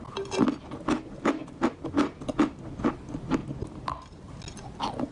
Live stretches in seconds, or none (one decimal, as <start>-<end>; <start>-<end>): 0.0-1.4; 1.9-3.4; 4.3-5.1